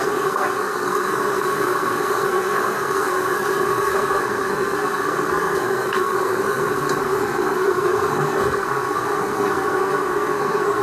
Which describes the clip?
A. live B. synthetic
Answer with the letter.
B